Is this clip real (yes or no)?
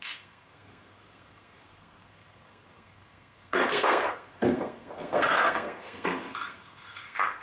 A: no